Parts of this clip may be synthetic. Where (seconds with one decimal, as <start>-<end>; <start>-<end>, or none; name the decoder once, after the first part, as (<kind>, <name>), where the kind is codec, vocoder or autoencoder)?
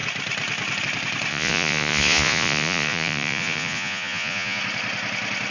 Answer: 1.3-4.6 (vocoder, Vocos)